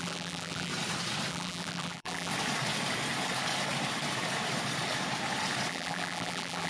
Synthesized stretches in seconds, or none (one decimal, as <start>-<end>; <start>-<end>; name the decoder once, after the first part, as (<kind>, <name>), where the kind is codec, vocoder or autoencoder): 0.0-0.7 (vocoder, BigVGAN v2); 1.3-2.3; 5.7-6.7